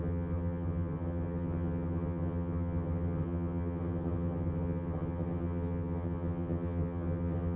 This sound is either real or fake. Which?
fake